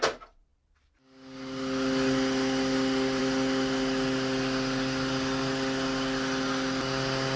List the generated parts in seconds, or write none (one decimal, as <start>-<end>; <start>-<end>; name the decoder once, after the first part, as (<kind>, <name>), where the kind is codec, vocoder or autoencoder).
none